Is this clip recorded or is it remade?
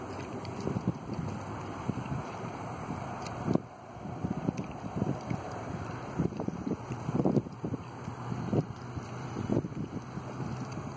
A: remade